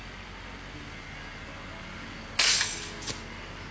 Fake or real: real